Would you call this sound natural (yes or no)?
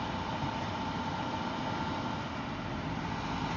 yes